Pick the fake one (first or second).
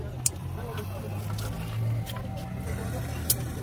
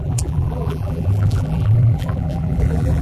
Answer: second